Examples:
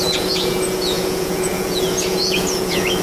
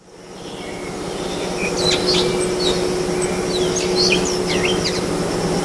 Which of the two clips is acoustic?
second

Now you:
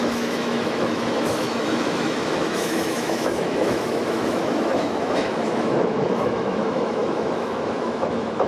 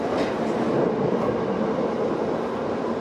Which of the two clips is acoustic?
second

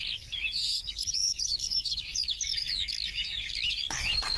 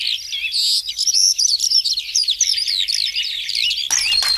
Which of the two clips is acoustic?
second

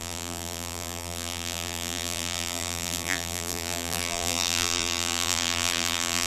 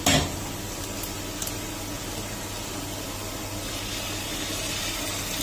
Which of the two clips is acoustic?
second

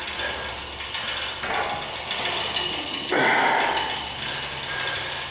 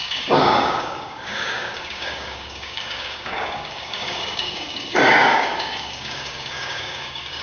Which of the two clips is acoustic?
first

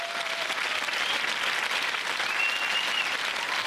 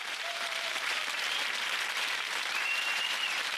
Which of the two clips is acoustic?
first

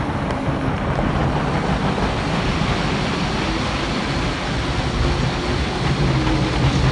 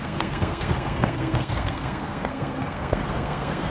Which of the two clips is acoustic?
first